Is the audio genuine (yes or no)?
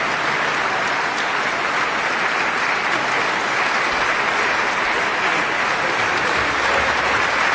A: yes